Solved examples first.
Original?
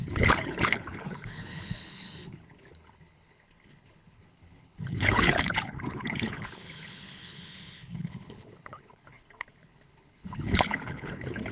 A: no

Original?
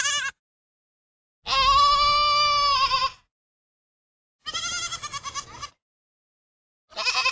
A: yes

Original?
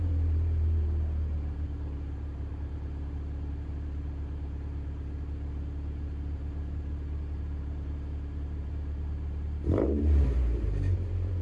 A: no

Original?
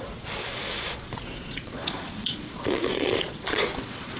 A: no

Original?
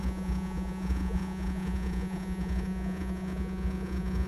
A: no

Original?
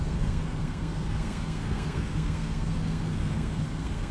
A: no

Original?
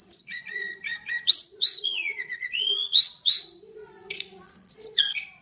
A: no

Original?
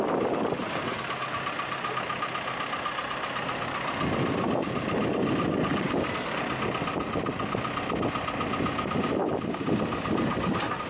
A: yes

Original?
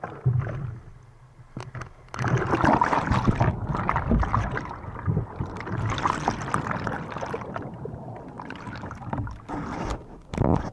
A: yes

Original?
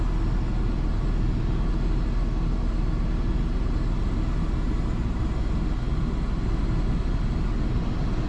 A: yes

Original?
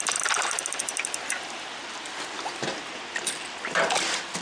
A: yes